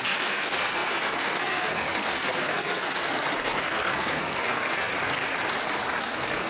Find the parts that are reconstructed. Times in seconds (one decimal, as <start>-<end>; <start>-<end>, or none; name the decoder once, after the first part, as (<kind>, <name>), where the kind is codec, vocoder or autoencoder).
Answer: 0.0-4.9 (codec, SNAC); 6.0-6.5